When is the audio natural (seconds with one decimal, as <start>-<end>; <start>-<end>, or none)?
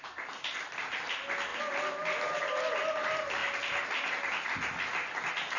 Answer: 0.0-5.6